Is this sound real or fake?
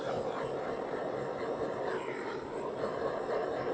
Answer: real